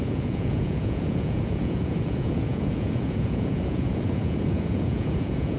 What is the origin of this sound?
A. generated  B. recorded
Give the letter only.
A